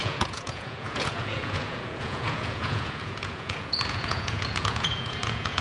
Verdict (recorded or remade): remade